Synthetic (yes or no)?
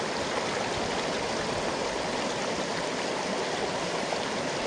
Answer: no